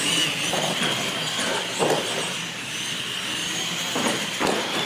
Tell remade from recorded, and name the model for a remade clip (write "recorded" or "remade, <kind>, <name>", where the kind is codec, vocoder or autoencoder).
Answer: recorded